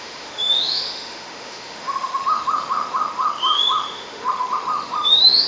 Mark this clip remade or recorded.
remade